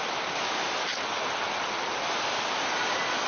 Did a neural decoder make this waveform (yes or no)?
no